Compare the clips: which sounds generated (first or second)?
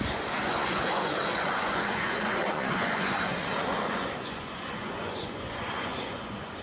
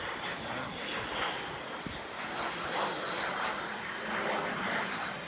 first